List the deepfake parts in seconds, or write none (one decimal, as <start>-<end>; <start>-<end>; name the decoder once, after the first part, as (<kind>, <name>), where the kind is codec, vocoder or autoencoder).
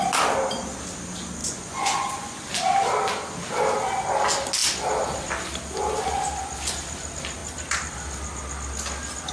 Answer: 1.4-2.4 (vocoder, Vocos)